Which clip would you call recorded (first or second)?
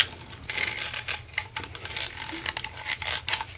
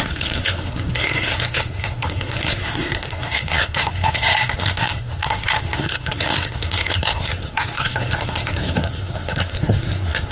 first